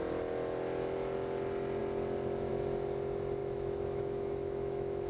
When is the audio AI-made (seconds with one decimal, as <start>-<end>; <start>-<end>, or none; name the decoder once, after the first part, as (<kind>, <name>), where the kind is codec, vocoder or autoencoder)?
3.4-5.1 (autoencoder, DAC-VAE)